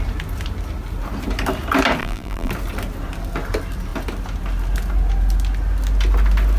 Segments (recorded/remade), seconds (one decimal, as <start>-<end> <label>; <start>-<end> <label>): 0.0-2.0 recorded; 2.0-2.5 remade; 2.5-6.6 recorded